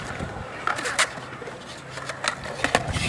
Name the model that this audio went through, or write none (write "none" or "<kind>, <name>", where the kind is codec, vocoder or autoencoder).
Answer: none